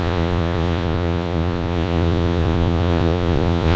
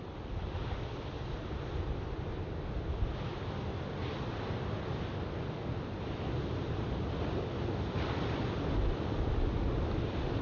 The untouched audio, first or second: second